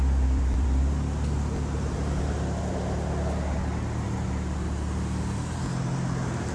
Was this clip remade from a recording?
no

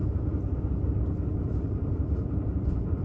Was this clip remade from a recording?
no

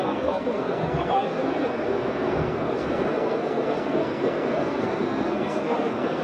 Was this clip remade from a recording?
yes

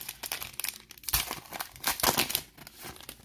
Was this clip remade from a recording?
no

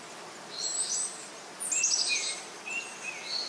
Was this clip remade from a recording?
no